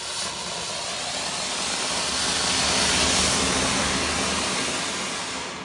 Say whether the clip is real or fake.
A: real